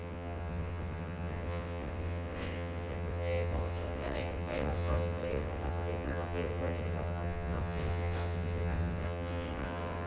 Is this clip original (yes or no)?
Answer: no